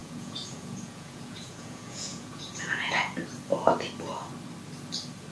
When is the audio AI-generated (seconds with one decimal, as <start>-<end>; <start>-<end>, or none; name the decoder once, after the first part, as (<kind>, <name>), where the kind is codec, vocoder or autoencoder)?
0.0-3.2 (vocoder, Vocos)